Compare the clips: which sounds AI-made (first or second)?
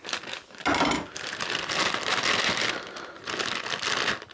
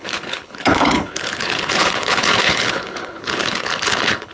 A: second